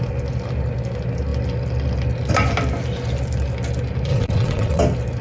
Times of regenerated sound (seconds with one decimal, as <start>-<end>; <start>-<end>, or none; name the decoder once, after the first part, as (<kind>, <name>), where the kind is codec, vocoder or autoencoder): 4.1-4.8 (vocoder, WaveNeXt)